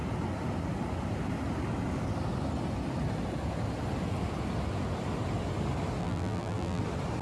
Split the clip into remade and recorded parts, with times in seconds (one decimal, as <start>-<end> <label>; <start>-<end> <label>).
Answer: 0.0-6.0 recorded; 6.0-6.8 remade; 6.8-7.2 recorded